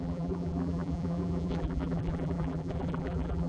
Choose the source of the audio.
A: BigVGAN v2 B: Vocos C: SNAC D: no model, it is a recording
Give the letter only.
A